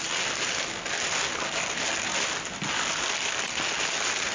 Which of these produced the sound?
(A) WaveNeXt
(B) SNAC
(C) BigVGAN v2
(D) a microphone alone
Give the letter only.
D